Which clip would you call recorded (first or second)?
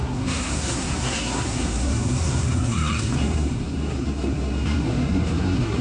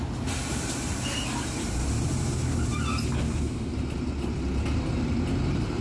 second